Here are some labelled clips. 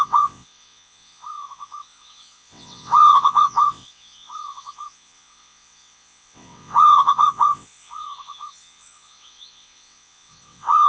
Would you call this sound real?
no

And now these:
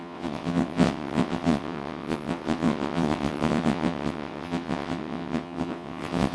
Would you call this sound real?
no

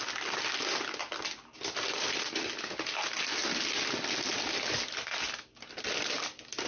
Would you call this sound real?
yes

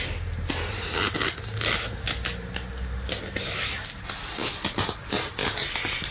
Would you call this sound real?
yes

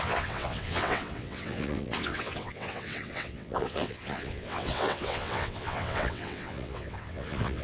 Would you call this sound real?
no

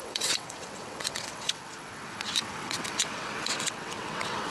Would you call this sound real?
no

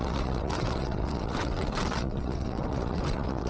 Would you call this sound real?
no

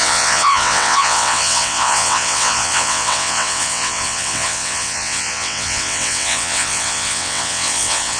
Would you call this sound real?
no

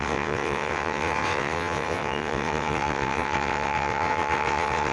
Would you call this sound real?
no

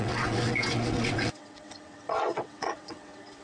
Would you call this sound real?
no